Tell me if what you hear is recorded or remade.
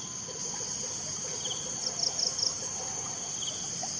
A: recorded